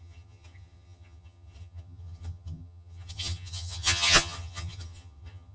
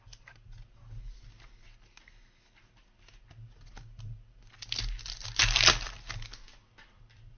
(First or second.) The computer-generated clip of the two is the first